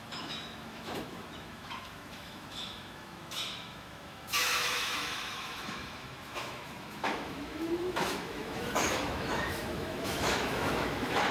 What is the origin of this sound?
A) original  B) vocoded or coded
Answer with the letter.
B